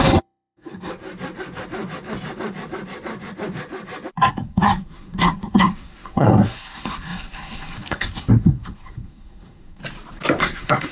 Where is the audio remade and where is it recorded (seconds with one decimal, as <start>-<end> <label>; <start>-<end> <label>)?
0.0-0.9 remade; 0.9-4.3 recorded; 4.3-9.8 remade; 9.8-10.4 recorded; 10.4-10.9 remade